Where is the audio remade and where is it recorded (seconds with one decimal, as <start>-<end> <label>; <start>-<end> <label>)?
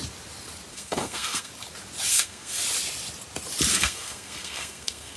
0.0-0.7 recorded; 0.7-1.5 remade; 1.5-2.1 recorded; 2.1-2.6 remade; 2.6-3.7 recorded; 3.7-5.2 remade